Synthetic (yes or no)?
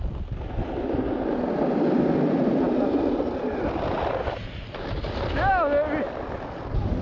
no